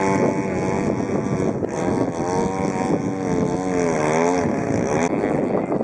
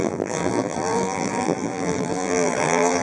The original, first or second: first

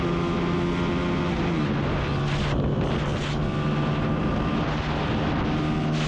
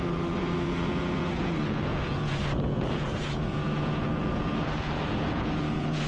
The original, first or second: first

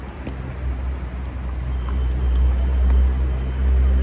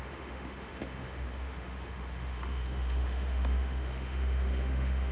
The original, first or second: first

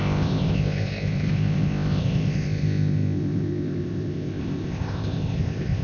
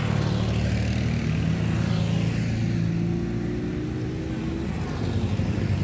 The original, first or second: second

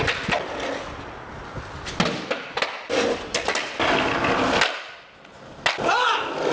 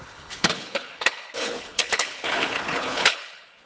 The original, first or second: first